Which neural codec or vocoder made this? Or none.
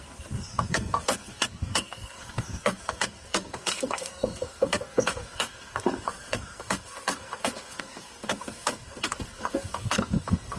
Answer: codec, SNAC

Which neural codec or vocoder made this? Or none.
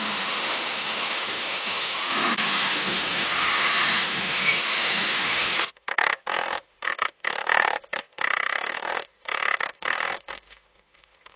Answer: autoencoder, DAC-VAE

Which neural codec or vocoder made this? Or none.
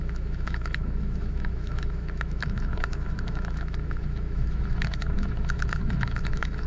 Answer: autoencoder, DAC-VAE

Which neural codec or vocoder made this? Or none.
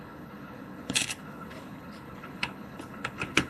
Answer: codec, HILCodec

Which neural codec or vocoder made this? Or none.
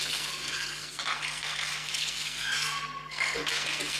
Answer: codec, SNAC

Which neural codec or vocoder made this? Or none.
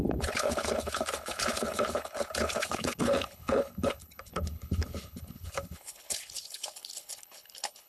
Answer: codec, HILCodec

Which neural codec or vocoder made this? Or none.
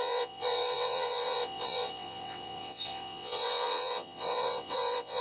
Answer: vocoder, WaveNeXt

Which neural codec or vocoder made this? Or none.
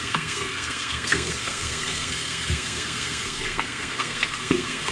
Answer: codec, SNAC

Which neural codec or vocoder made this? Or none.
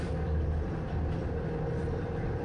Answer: vocoder, BigVGAN v2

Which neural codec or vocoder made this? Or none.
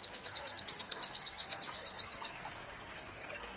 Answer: codec, SNAC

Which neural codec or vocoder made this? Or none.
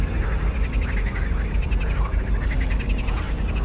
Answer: none